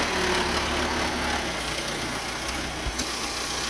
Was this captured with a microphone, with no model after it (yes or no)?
yes